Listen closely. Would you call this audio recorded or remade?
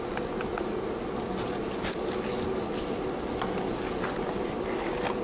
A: recorded